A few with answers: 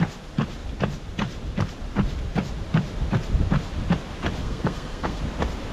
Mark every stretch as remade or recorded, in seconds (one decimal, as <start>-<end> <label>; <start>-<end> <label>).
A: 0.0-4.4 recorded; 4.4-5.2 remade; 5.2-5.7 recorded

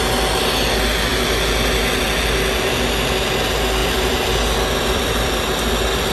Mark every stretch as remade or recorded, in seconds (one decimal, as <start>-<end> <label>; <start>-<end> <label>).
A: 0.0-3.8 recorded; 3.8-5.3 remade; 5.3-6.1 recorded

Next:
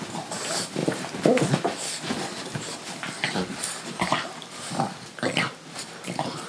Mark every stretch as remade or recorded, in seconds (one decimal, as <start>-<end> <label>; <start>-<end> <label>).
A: 0.0-0.8 recorded; 0.8-4.7 remade; 4.7-6.5 recorded